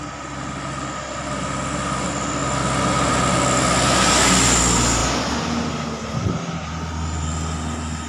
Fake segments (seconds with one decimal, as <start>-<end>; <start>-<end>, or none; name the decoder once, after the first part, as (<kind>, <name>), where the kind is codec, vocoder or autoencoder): 5.0-5.7 (vocoder, BigVGAN v2)